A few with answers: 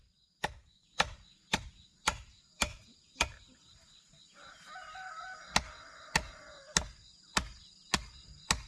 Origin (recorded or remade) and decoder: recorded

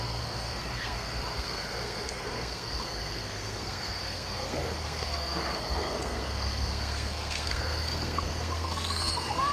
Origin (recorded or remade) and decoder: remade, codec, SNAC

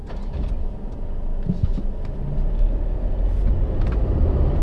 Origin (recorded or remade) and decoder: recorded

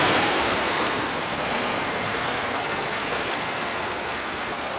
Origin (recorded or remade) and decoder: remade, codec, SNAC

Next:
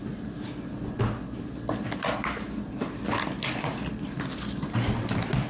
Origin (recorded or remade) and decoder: recorded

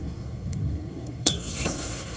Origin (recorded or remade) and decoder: remade, codec, SNAC